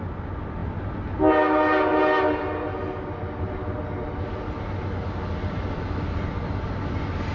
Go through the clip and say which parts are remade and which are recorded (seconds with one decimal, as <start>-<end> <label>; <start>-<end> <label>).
0.0-7.3 recorded

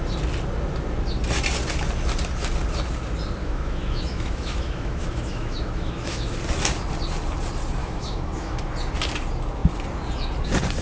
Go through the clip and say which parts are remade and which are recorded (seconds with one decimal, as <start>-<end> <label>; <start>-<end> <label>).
0.0-3.4 recorded; 3.4-6.4 remade; 6.4-7.8 recorded; 7.8-8.7 remade; 8.7-10.8 recorded

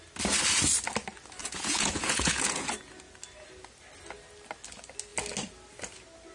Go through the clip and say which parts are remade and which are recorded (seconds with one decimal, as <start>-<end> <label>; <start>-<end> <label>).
0.0-1.4 recorded; 1.4-2.7 remade; 2.7-6.3 recorded